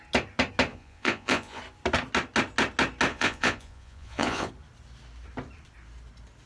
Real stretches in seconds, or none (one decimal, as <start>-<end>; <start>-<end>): 0.0-0.7; 1.6-3.1; 4.5-6.5